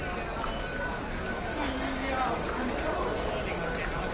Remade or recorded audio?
recorded